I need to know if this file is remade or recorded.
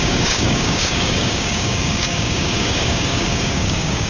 remade